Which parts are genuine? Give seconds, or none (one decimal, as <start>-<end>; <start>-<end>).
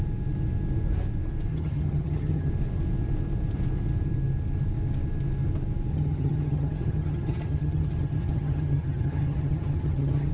0.0-1.5; 2.5-5.9